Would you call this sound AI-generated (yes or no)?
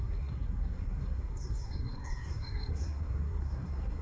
yes